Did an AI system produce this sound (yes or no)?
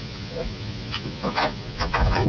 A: yes